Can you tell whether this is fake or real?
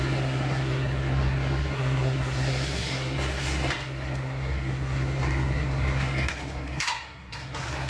fake